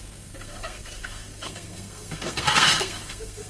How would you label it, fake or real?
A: fake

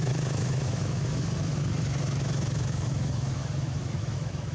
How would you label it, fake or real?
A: fake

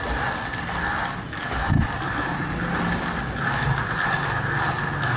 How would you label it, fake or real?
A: real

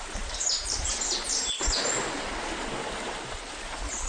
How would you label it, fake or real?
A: real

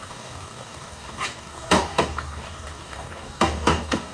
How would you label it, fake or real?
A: fake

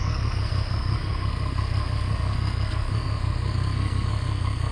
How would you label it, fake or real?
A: fake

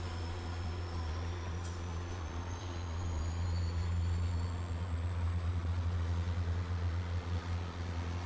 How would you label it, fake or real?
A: fake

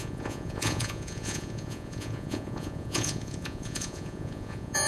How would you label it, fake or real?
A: fake